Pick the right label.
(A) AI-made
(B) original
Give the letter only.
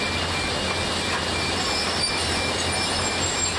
B